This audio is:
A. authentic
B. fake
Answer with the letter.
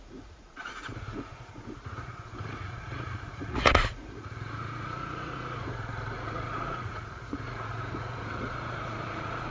B